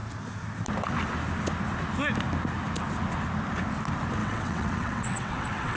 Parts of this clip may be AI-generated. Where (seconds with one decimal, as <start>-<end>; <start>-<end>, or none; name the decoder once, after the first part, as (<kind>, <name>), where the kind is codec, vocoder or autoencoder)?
4.2-5.8 (vocoder, WaveNeXt)